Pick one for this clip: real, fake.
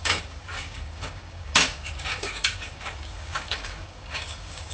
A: fake